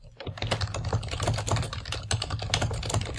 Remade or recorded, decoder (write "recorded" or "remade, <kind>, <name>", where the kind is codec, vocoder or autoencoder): recorded